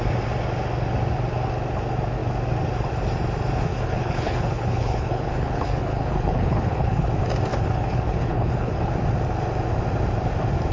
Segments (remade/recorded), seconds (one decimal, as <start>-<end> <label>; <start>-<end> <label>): 0.0-3.7 recorded; 3.7-7.1 remade; 7.1-7.5 recorded; 7.5-8.9 remade; 8.9-10.7 recorded